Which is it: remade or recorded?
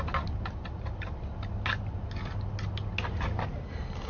recorded